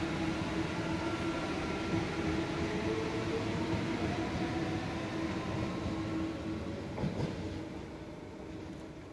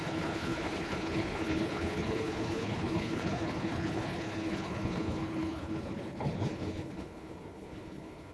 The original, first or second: first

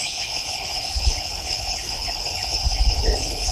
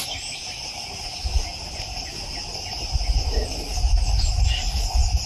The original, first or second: second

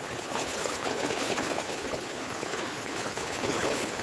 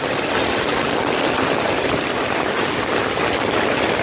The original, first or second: second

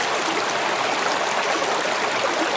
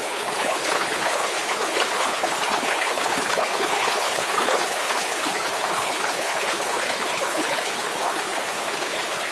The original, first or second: first